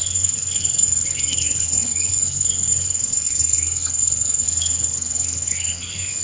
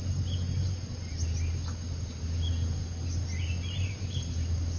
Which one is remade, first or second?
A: first